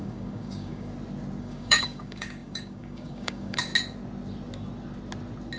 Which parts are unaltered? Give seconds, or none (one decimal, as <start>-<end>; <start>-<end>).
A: 0.9-1.4; 3.7-5.6